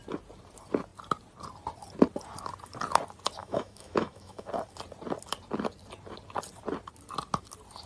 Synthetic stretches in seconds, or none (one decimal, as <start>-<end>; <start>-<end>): 3.4-4.5